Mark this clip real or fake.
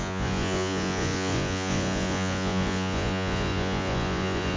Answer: fake